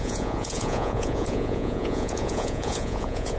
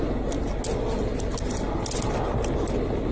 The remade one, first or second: first